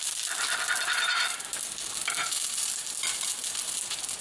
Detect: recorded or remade remade